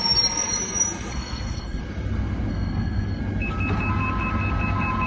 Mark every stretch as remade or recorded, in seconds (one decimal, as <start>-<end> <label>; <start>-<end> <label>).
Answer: 0.0-1.1 recorded; 1.1-1.8 remade; 1.8-2.5 recorded; 2.5-3.2 remade; 3.2-5.1 recorded